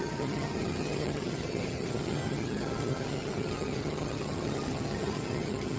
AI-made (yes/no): yes